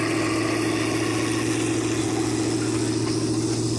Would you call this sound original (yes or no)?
yes